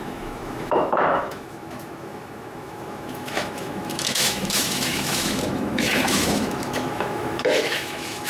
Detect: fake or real fake